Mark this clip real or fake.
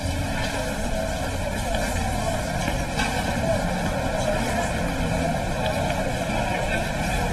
fake